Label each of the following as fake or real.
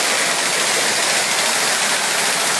real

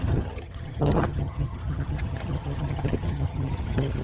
fake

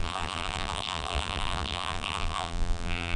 fake